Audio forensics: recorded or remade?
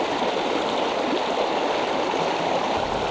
recorded